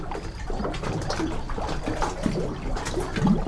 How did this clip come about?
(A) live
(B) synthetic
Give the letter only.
A